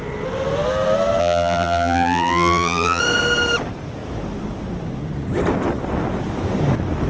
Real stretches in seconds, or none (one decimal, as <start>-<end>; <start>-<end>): 0.0-1.2; 3.0-7.1